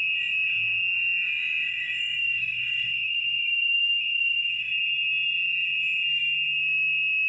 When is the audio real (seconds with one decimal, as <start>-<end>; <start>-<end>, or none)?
0.0-1.7; 4.7-7.3